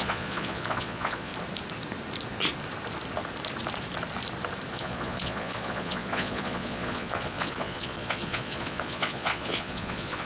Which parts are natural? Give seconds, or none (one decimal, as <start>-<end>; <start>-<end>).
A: 1.3-4.7